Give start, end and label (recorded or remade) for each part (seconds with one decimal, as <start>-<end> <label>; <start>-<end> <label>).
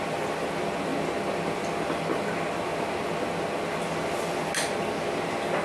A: 0.0-5.6 recorded